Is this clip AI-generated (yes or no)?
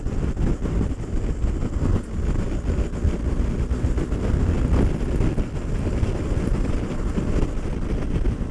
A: no